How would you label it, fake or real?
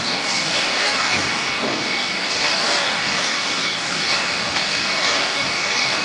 fake